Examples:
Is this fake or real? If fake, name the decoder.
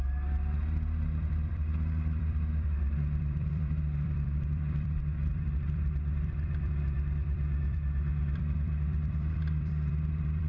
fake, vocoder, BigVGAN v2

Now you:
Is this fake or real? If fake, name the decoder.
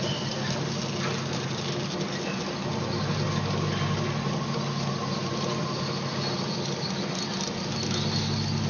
real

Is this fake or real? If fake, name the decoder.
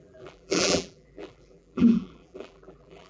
fake, vocoder, BigVGAN v2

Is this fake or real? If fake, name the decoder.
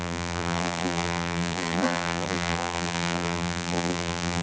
fake, vocoder, BigVGAN v2